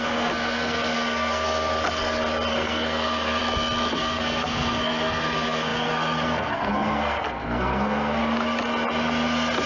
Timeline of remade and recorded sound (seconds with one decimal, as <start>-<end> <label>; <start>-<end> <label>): 0.0-1.7 remade; 1.7-2.5 recorded; 2.5-3.4 remade; 3.4-3.9 recorded; 3.9-8.2 remade; 8.2-9.7 recorded